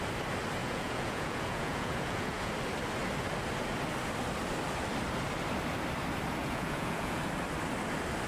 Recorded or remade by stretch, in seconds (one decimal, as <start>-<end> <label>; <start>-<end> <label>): 0.0-0.6 recorded; 0.6-2.5 remade; 2.5-6.4 recorded; 6.4-7.2 remade; 7.2-8.3 recorded